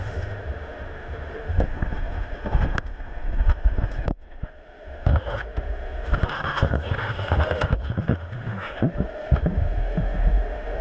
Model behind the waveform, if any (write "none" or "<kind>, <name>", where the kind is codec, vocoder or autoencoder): autoencoder, DAC-VAE